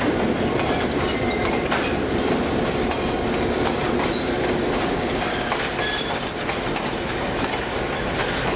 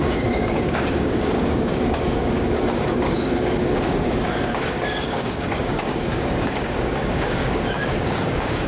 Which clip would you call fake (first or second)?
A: second